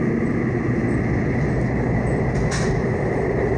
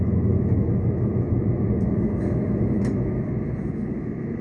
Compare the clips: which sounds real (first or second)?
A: first